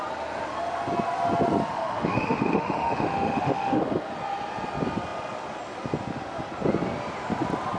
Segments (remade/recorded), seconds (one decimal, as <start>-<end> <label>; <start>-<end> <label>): 0.0-1.7 recorded; 1.7-4.1 remade; 4.1-7.8 recorded